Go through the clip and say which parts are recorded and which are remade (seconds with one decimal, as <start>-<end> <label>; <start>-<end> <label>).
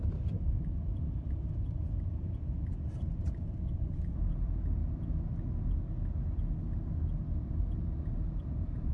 0.0-1.4 remade; 1.4-2.0 recorded; 2.0-4.8 remade; 4.8-7.4 recorded; 7.4-8.9 remade